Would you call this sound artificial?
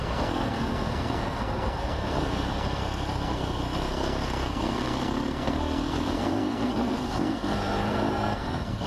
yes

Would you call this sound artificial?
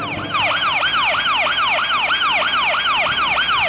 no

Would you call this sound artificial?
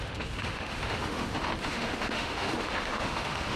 yes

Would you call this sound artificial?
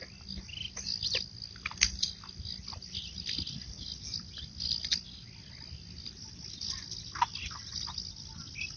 no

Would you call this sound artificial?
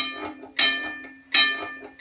no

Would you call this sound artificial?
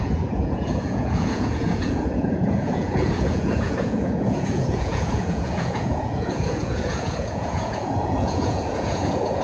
yes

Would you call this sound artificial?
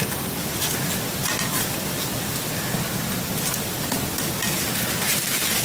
no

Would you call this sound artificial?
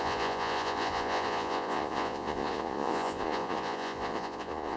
yes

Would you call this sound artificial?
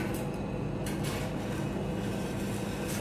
no